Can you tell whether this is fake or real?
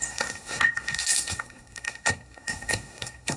fake